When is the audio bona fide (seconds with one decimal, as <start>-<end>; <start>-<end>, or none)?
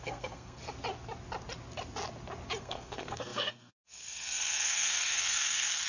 0.6-2.6